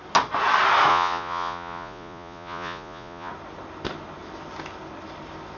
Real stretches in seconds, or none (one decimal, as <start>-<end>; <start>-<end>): 0.0-0.9; 3.3-5.6